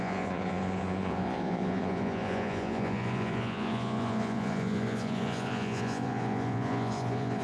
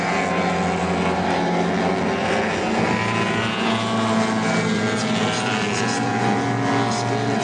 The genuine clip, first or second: second